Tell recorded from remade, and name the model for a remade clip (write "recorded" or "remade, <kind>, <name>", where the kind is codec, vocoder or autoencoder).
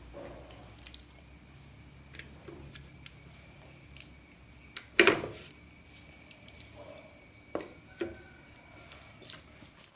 recorded